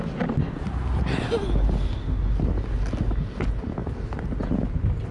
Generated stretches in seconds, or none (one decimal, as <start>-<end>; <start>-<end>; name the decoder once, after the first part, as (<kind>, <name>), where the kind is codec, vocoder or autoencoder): none